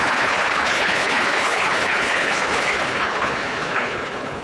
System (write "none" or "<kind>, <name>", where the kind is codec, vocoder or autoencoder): codec, HILCodec